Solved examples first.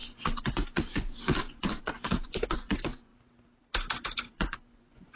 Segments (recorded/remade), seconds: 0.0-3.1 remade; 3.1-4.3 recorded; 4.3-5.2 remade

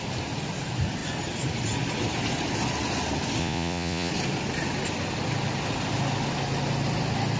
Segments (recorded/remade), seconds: 0.0-3.4 recorded; 3.4-4.1 remade; 4.1-7.4 recorded

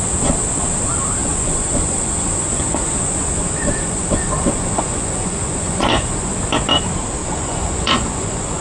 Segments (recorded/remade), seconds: 0.0-1.2 recorded; 1.2-6.3 remade; 6.3-7.2 recorded; 7.2-8.6 remade

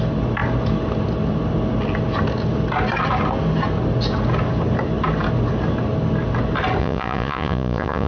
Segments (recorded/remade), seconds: 0.0-6.8 recorded; 6.8-8.1 remade

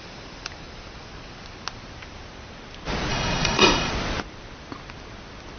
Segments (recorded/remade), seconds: 0.0-3.1 recorded; 3.1-3.9 remade; 3.9-5.6 recorded

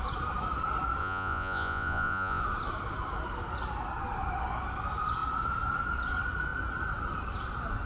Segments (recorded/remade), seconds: 0.0-1.0 recorded; 1.0-2.4 remade; 2.4-7.9 recorded

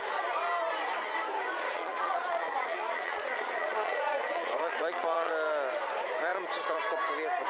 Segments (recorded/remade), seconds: 0.0-1.5 recorded; 1.5-5.3 remade; 5.3-6.3 recorded; 6.3-6.8 remade; 6.8-7.5 recorded